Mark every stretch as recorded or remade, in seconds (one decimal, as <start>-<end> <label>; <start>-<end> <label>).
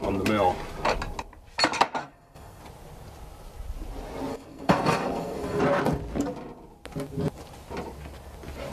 0.0-2.0 recorded; 2.0-2.6 remade; 2.6-4.3 recorded; 4.3-5.6 remade; 5.6-8.7 recorded